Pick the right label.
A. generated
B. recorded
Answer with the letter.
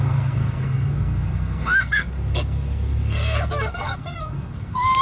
A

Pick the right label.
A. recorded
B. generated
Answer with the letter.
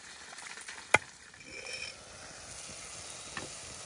A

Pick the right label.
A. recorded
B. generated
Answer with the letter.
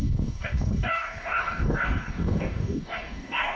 B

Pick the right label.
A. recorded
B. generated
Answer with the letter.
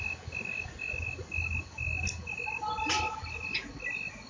A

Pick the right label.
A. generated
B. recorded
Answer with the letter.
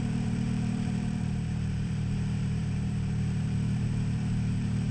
A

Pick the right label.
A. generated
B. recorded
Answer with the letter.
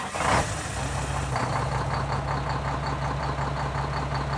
B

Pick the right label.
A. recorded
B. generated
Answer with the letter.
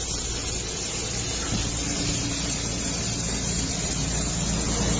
A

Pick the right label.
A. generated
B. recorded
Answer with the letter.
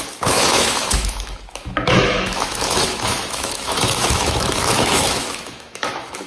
A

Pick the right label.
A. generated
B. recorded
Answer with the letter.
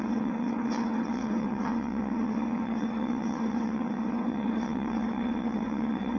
A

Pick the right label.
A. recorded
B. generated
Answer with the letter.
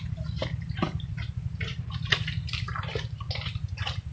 A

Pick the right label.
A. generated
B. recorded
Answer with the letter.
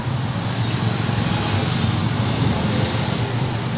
B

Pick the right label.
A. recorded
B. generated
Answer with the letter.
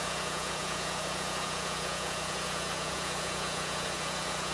B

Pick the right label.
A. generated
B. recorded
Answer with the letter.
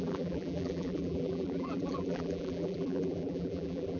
A